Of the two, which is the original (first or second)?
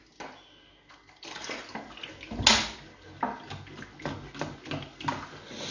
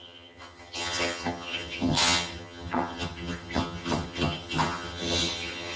first